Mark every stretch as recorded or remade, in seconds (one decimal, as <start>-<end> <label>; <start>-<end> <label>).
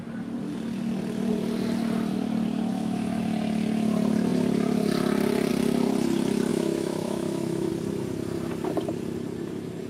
0.0-2.7 recorded; 2.7-3.2 remade; 3.2-6.5 recorded; 6.5-7.7 remade; 7.7-9.9 recorded